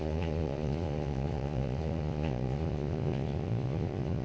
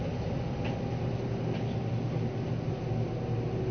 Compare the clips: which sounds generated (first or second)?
first